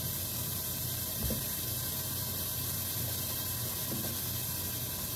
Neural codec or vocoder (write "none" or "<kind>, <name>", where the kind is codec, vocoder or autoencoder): none